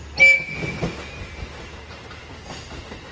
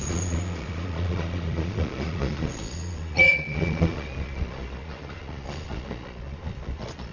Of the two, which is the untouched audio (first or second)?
first